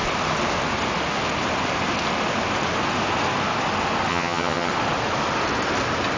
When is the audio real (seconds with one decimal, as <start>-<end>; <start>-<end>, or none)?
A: 0.0-4.1; 4.7-6.2